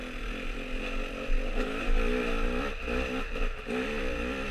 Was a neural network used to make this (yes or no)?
no